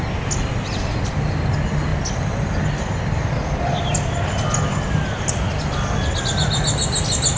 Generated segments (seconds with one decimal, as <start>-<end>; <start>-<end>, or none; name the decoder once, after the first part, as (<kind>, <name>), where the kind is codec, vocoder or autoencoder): none